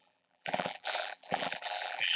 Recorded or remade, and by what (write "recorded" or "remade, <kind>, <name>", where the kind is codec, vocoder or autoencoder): remade, vocoder, BigVGAN v2